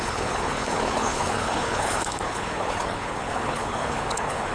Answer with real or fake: fake